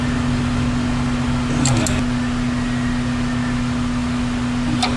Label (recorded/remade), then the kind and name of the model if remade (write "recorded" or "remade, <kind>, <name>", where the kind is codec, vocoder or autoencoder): recorded